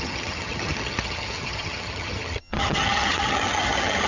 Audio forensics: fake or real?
fake